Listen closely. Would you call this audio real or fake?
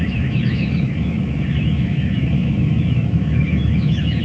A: fake